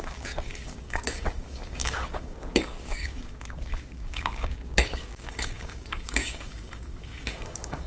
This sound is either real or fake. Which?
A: fake